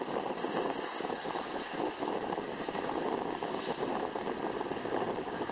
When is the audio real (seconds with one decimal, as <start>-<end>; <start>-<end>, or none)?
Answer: 0.0-2.5; 3.0-3.5; 4.1-5.5